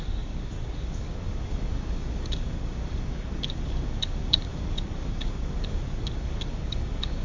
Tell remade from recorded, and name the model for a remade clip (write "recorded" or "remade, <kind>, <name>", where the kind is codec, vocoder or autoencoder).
remade, codec, DAC